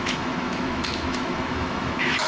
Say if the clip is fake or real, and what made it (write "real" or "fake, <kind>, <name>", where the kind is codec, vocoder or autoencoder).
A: fake, autoencoder, DAC-VAE